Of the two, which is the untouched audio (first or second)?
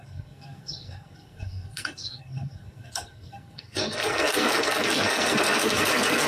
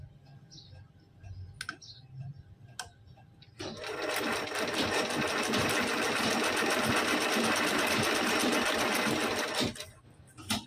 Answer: second